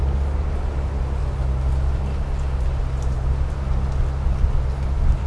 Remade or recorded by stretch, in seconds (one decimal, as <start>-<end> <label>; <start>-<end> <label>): 0.0-5.3 recorded